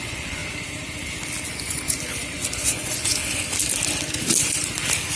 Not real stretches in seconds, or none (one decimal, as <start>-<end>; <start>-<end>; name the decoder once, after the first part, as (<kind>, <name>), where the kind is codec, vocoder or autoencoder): 0.0-0.4 (vocoder, Vocos); 1.5-3.2